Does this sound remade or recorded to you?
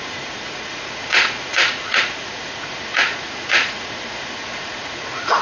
remade